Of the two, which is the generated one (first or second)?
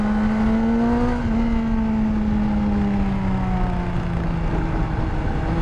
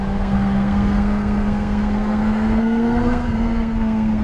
second